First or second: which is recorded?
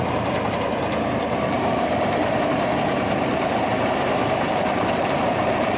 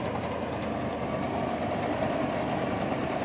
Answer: second